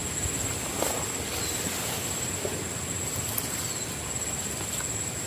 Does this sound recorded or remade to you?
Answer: recorded